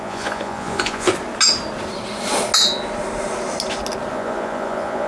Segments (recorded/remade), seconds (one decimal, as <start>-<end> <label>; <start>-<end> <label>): 0.0-1.1 remade; 1.1-4.1 recorded; 4.1-5.1 remade